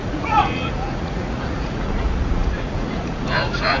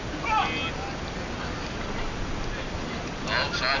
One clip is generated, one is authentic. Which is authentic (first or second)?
second